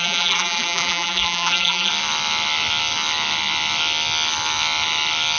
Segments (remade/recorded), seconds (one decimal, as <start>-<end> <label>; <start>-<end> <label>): 0.0-1.9 remade; 1.9-5.4 recorded